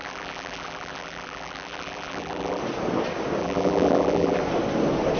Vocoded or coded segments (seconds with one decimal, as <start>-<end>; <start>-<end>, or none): 0.0-2.6; 3.4-4.4